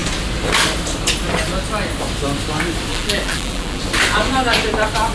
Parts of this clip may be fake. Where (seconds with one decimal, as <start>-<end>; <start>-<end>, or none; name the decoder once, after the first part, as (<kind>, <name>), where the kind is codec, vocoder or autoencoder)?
2.9-3.8 (vocoder, BigVGAN v2)